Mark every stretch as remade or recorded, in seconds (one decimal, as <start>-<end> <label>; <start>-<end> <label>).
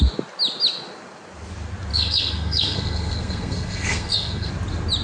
0.0-1.9 recorded; 1.9-4.5 remade; 4.5-5.0 recorded